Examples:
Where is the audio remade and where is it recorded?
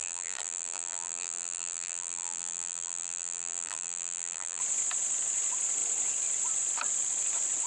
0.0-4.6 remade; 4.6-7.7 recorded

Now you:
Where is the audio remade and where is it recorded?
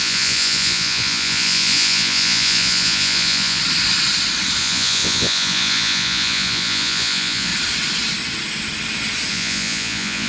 0.0-3.6 remade; 3.6-4.6 recorded; 4.6-7.5 remade; 7.5-9.3 recorded; 9.3-10.3 remade